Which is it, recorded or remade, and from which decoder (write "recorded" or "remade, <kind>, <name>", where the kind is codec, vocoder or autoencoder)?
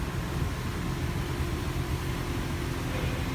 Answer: recorded